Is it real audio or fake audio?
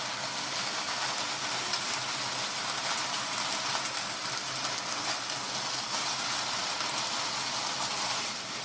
real